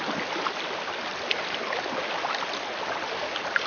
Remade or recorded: recorded